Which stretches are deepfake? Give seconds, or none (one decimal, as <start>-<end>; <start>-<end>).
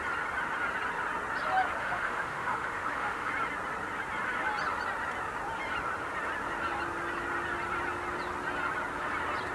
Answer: 1.8-3.3